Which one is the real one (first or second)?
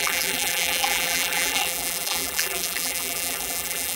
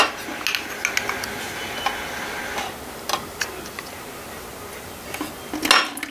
second